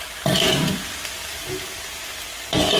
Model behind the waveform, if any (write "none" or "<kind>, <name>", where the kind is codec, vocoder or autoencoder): none